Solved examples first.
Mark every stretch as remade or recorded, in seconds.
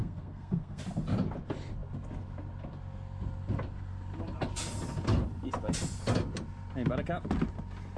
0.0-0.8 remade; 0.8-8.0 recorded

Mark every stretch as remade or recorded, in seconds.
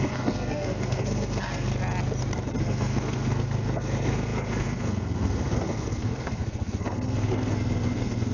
0.0-1.7 remade; 1.7-2.6 recorded; 2.6-8.3 remade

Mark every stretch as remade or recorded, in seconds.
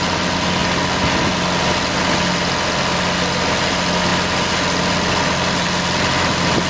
0.0-6.7 recorded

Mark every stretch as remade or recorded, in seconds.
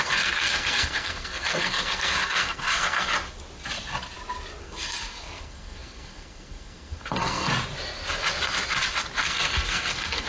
0.0-3.1 remade; 3.1-4.6 recorded; 4.6-7.5 remade; 7.5-9.2 recorded; 9.2-10.3 remade